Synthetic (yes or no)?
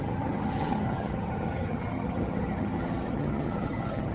yes